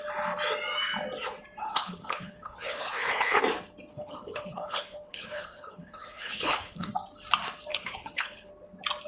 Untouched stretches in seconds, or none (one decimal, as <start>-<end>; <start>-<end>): 0.0-1.6; 3.4-3.9; 6.9-7.7; 8.5-9.1